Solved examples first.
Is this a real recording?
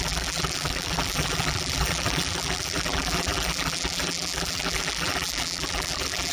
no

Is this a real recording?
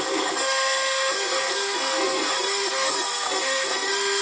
no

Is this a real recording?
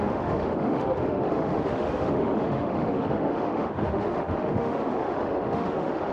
no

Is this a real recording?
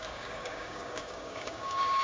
no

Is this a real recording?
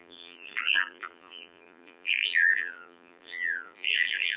no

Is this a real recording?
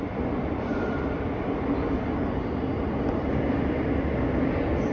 yes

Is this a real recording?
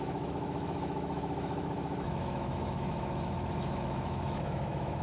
no